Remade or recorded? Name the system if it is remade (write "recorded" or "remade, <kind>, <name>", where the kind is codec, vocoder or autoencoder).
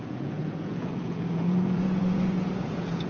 remade, vocoder, Vocos